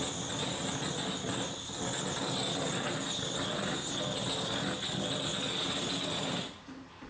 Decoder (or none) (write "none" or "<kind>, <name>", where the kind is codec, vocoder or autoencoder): none